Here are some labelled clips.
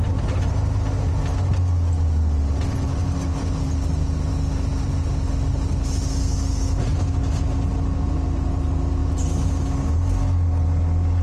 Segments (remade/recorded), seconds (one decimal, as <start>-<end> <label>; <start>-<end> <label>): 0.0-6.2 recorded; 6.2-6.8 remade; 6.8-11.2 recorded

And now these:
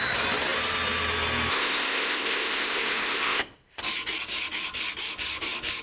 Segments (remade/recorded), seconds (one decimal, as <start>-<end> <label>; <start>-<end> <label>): 0.0-1.5 recorded; 1.5-3.8 remade; 3.8-5.8 recorded

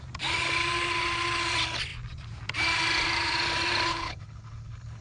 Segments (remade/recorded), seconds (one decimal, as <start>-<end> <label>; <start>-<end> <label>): 0.0-3.9 recorded; 3.9-5.0 remade

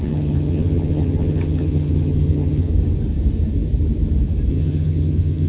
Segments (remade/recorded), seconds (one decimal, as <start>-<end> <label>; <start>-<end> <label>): 0.0-2.7 remade; 2.7-4.5 recorded; 4.5-5.5 remade

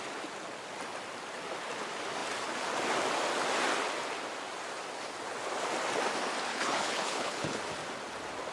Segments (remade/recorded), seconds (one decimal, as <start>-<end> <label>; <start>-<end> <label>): 0.0-6.5 recorded; 6.5-7.6 remade; 7.6-8.5 recorded

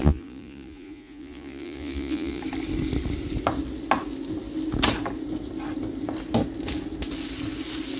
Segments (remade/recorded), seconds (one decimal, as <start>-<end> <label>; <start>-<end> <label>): 0.0-2.4 remade; 2.4-8.0 recorded